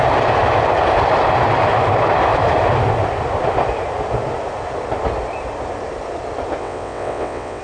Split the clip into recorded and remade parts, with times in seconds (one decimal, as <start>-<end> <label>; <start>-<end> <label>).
0.0-6.6 recorded; 6.6-7.6 remade